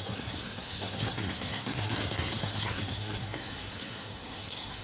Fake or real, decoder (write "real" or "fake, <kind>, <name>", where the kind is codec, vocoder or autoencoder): fake, codec, SNAC